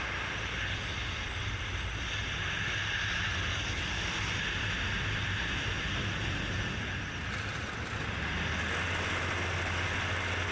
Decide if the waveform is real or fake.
real